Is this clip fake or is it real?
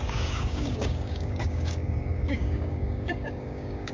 fake